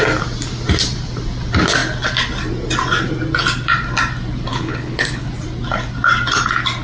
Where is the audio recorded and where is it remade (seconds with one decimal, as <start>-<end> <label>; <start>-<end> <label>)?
0.0-4.5 recorded; 4.5-5.3 remade; 5.3-6.8 recorded